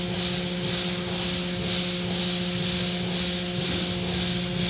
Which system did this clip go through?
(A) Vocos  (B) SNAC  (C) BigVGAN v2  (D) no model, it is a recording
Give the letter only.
D